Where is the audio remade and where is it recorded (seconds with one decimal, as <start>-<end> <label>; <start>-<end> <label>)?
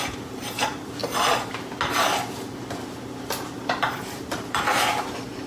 0.0-1.0 remade; 1.0-2.9 recorded; 2.9-5.5 remade